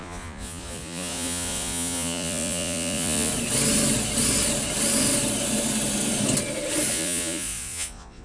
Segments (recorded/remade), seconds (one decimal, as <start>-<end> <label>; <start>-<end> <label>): 0.0-3.3 remade; 3.3-6.9 recorded; 6.9-8.2 remade